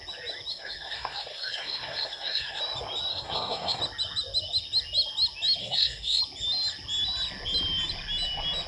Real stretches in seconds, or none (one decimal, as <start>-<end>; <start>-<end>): 0.0-0.5; 2.6-3.1; 3.8-5.6; 6.2-8.7